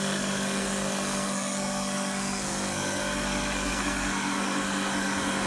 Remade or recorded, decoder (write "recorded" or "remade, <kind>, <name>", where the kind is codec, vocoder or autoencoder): remade, codec, SNAC